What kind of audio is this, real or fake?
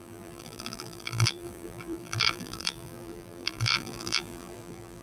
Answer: fake